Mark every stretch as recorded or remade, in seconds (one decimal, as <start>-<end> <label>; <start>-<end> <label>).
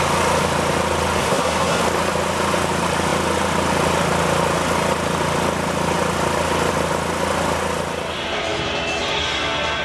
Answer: 0.0-1.2 recorded; 1.2-1.8 remade; 1.8-9.8 recorded